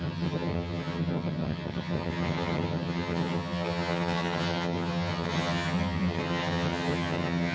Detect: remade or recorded remade